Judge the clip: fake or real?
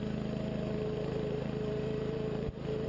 fake